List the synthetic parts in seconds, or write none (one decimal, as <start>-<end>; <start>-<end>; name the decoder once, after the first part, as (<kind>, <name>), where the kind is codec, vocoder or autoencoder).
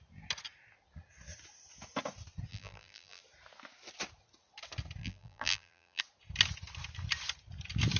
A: 2.5-3.2 (vocoder, BigVGAN v2); 5.0-6.0